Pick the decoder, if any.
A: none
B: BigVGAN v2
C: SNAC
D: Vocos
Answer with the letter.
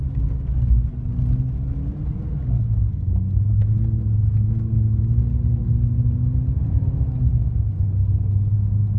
A